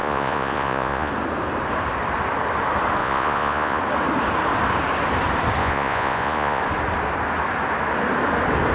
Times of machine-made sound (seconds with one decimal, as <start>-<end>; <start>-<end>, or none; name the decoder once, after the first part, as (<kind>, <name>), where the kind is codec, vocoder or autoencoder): 0.0-1.1 (vocoder, Vocos); 3.0-3.8; 5.6-6.6